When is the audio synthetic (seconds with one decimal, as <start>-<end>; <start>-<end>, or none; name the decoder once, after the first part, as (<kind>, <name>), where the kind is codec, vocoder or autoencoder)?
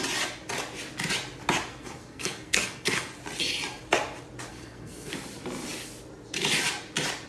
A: 1.7-3.1 (codec, SNAC); 4.5-5.1